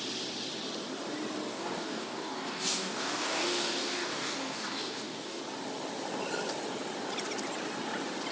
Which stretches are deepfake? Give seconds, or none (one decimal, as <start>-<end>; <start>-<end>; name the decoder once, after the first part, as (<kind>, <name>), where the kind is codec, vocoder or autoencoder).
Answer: 1.5-5.4 (codec, DAC)